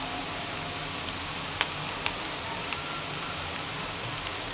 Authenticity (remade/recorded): recorded